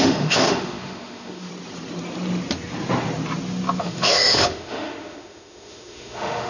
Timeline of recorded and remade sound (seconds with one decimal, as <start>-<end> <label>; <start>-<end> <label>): 0.0-1.5 remade; 1.5-3.8 recorded; 3.8-6.5 remade